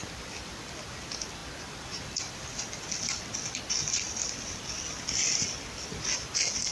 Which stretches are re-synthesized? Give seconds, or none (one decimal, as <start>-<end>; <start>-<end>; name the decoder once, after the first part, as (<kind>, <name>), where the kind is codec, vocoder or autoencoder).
none